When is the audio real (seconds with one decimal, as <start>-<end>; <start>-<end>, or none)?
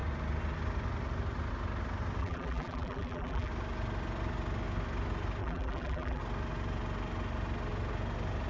0.0-2.2; 3.5-5.4; 6.2-8.5